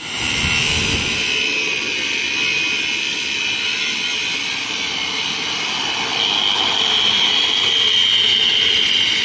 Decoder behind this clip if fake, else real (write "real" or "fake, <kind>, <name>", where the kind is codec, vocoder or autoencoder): real